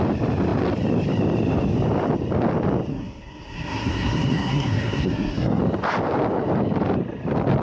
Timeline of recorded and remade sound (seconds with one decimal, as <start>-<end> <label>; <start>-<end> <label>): 0.0-2.9 recorded; 2.9-5.6 remade; 5.6-7.6 recorded